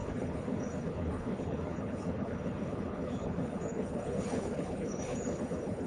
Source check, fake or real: fake